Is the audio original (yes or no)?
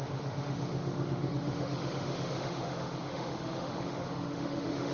no